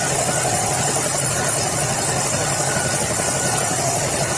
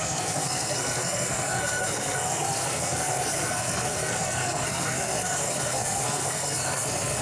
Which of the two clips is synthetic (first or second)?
second